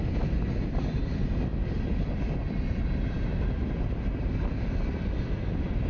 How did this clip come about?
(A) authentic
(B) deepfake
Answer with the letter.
A